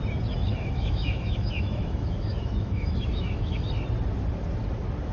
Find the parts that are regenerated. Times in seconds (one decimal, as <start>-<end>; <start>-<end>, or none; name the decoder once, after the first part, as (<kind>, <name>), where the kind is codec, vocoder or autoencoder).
0.5-3.6 (autoencoder, DAC-VAE)